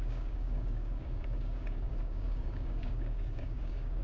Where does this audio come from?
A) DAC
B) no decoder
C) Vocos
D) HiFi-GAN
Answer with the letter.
A